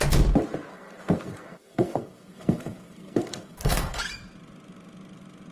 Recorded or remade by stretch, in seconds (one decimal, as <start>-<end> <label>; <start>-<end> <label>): 0.0-0.7 recorded; 0.7-4.0 remade; 4.0-5.5 recorded